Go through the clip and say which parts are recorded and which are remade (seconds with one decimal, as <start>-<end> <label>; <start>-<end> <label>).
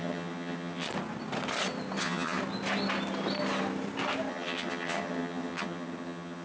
0.0-0.9 remade; 0.9-2.0 recorded; 2.0-2.4 remade; 2.4-4.3 recorded; 4.3-6.4 remade